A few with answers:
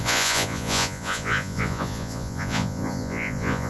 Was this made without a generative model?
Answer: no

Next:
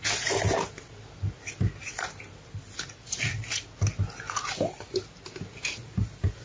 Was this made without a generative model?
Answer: yes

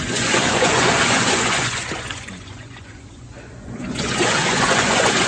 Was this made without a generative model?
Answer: no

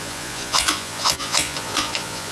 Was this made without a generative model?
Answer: no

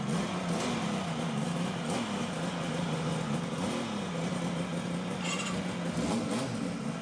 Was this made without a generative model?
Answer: yes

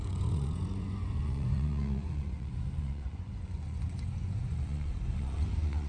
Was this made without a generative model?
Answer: no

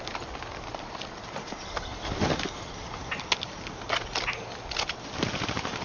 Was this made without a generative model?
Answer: yes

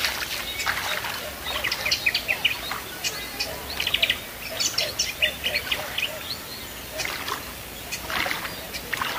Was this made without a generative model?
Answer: yes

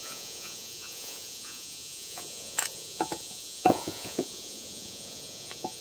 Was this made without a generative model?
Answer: no